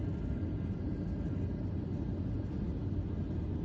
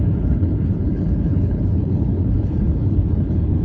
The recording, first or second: first